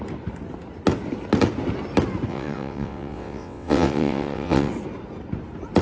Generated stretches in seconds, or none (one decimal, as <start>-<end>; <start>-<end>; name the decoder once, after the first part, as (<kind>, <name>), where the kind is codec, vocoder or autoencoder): 2.3-4.7 (vocoder, WaveNeXt)